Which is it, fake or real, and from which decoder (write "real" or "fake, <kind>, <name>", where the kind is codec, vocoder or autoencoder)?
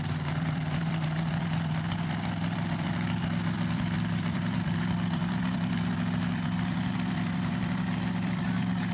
fake, vocoder, BigVGAN v2